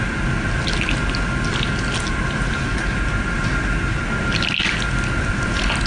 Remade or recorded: recorded